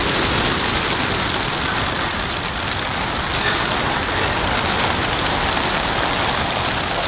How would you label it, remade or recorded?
recorded